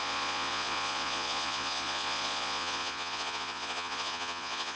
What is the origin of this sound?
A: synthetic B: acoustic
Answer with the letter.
A